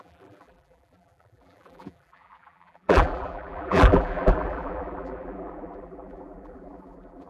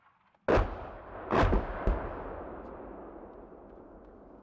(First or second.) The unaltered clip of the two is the second